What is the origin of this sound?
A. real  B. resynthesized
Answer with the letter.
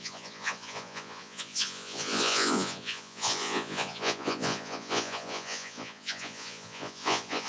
B